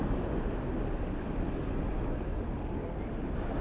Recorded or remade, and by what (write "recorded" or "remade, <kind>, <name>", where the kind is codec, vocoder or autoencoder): recorded